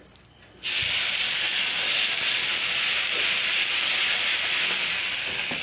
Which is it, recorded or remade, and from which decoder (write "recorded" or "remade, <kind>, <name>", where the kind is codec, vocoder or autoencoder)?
recorded